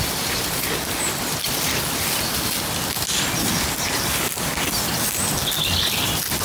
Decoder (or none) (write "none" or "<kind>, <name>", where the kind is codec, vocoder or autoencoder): none